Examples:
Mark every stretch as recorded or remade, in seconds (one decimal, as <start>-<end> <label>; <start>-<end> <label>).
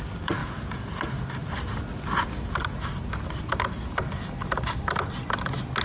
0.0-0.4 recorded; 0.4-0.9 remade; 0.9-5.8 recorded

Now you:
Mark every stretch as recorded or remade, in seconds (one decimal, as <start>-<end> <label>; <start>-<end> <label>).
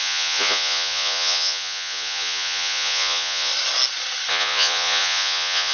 0.0-3.5 remade; 3.5-4.3 recorded; 4.3-5.7 remade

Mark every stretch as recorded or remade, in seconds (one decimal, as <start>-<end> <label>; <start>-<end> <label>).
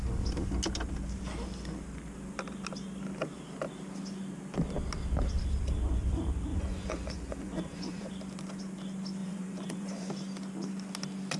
0.0-6.5 recorded; 6.5-8.1 remade; 8.1-9.2 recorded; 9.2-10.1 remade; 10.1-11.4 recorded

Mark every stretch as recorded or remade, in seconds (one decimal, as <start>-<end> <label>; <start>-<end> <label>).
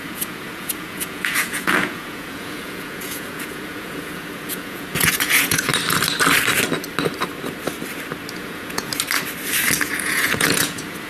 0.0-5.7 remade; 5.7-8.3 recorded; 8.3-8.9 remade; 8.9-9.8 recorded; 9.8-11.1 remade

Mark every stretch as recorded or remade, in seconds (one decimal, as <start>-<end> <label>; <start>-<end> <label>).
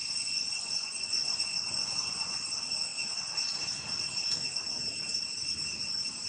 0.0-2.3 remade; 2.3-6.3 recorded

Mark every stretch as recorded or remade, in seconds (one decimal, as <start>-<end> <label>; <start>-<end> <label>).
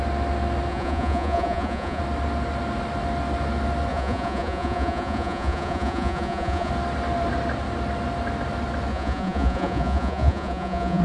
0.0-0.7 recorded; 0.7-2.0 remade; 2.0-3.9 recorded; 3.9-6.7 remade; 6.7-8.9 recorded; 8.9-11.0 remade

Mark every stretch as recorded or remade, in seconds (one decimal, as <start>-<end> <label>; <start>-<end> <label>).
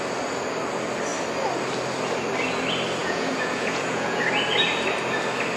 0.0-3.0 recorded; 3.0-4.2 remade; 4.2-5.6 recorded